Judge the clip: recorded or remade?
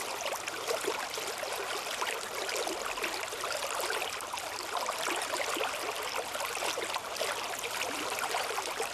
recorded